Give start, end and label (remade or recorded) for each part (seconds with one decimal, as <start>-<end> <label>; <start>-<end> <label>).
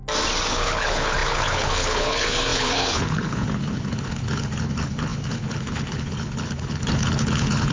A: 0.0-0.5 recorded; 0.5-7.7 remade